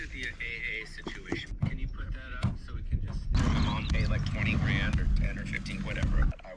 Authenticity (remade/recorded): recorded